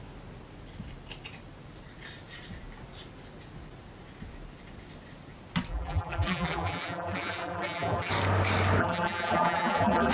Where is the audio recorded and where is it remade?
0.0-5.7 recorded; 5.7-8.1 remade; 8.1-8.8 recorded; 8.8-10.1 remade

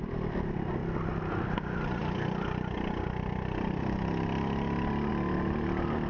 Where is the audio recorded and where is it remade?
0.0-6.1 recorded

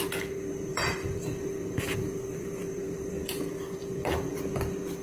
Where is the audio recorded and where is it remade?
0.0-0.7 recorded; 0.7-3.4 remade; 3.4-3.8 recorded; 3.8-4.4 remade; 4.4-5.0 recorded

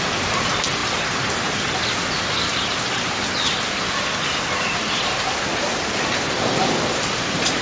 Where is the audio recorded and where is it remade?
0.0-7.6 remade

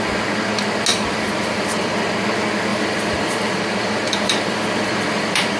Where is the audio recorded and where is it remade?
0.0-0.9 recorded; 0.9-1.9 remade; 1.9-2.7 recorded; 2.7-5.6 remade